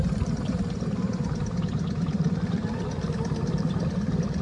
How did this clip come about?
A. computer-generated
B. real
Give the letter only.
A